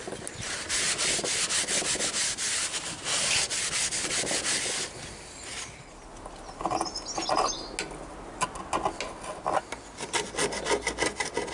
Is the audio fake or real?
real